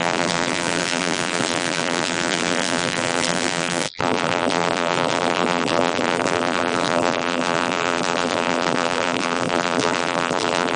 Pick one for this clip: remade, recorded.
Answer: remade